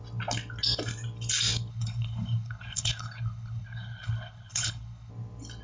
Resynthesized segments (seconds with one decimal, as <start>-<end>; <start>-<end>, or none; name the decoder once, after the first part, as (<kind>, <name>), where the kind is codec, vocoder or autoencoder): 1.7-5.1 (codec, HILCodec)